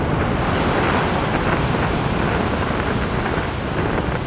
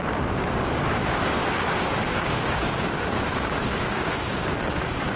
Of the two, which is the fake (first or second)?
second